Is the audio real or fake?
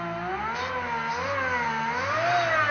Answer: real